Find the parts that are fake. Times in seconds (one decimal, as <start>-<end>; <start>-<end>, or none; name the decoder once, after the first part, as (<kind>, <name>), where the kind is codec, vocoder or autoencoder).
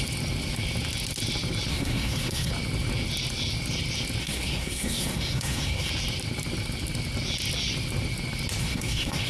1.7-2.5 (codec, SNAC); 4.2-5.9; 8.6-9.3